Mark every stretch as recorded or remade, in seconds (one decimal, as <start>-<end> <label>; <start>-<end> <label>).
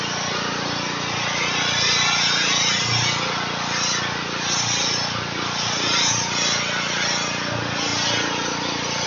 0.0-9.1 recorded